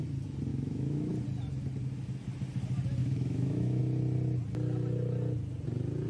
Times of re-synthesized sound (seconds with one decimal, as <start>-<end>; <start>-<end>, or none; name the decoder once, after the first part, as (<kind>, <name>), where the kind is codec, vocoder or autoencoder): 0.5-1.1 (autoencoder, DAC-VAE); 3.0-3.8